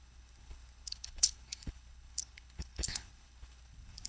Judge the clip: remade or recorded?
remade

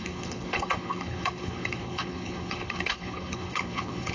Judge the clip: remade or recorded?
remade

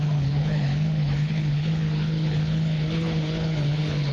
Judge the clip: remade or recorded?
remade